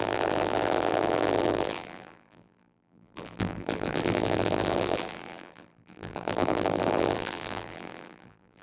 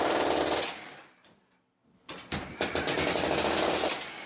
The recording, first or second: second